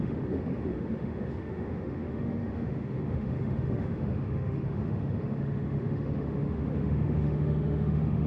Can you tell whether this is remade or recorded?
remade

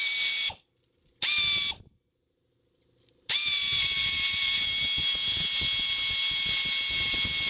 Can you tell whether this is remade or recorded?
recorded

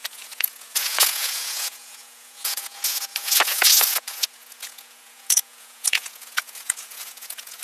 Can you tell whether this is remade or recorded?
remade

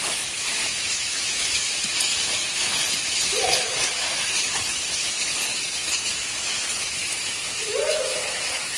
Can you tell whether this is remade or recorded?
remade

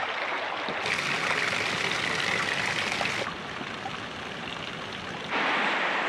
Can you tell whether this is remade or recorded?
recorded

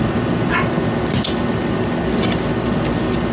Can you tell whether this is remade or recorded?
recorded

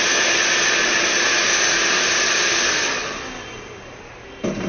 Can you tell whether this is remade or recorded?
recorded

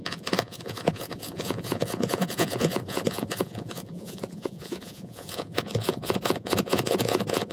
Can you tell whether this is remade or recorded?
remade